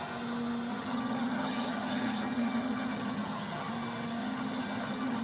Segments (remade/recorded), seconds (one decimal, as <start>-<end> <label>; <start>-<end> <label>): 0.0-0.7 recorded; 0.7-3.7 remade; 3.7-4.2 recorded; 4.2-5.2 remade

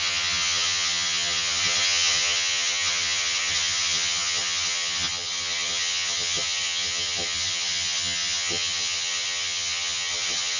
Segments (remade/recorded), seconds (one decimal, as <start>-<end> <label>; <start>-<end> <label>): 0.0-10.6 remade

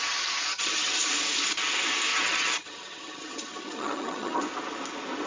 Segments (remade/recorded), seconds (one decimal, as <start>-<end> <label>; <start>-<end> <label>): 0.0-0.5 recorded; 0.5-1.1 remade; 1.1-2.1 recorded; 2.1-4.4 remade; 4.4-5.3 recorded

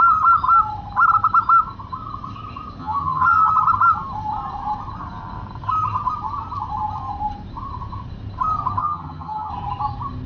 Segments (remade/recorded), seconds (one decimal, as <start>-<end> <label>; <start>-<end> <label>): 0.0-2.8 recorded; 2.8-3.5 remade; 3.5-8.8 recorded; 8.8-9.5 remade; 9.5-10.3 recorded

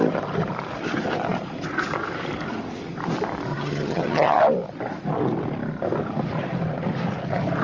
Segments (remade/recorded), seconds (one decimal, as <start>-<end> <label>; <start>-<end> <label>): 0.0-3.5 recorded; 3.5-4.4 remade; 4.4-7.6 recorded